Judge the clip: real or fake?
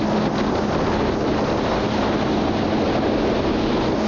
real